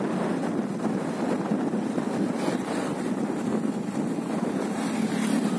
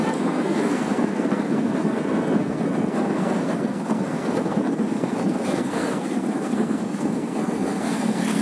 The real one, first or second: first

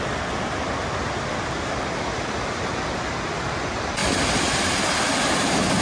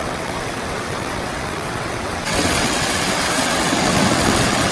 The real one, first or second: first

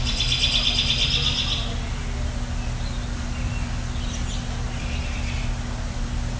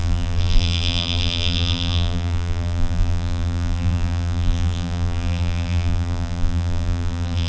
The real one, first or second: first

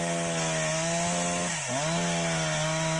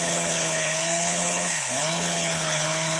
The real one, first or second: first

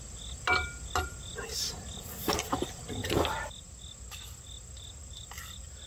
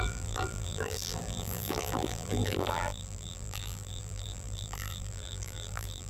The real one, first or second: first